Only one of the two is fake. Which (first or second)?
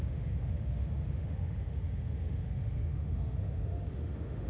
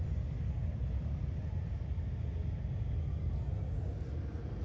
first